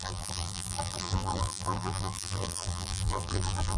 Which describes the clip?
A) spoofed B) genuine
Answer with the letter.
A